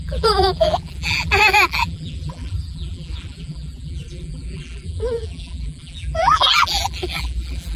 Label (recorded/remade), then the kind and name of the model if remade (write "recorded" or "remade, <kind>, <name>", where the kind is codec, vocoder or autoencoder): remade, vocoder, BigVGAN v2